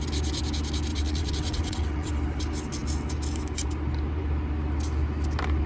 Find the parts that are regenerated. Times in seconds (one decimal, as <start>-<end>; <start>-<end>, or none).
0.9-2.1